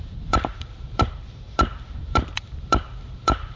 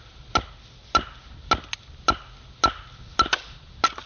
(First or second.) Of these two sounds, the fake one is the first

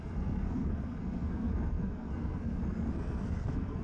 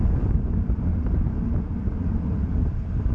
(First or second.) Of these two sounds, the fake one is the first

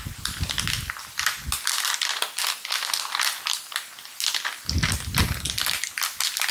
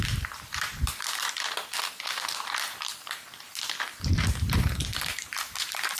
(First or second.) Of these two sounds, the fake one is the second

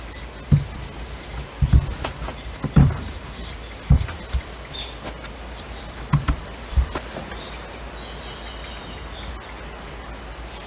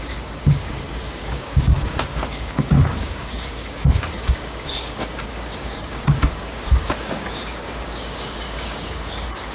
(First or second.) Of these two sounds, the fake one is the second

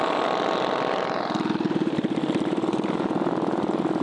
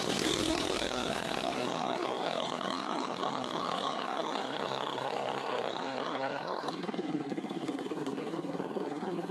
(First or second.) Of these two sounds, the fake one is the second